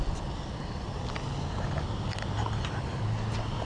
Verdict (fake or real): real